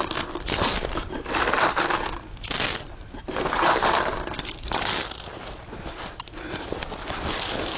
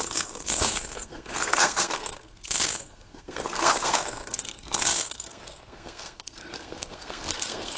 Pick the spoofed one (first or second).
second